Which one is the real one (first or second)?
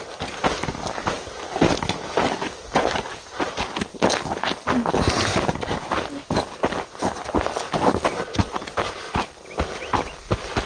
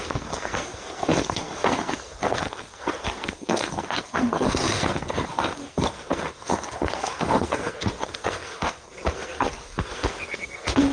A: first